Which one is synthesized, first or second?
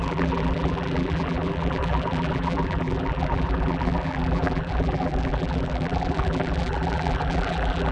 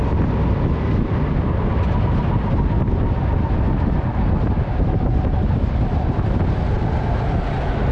first